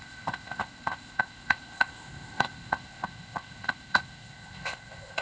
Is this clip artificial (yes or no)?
yes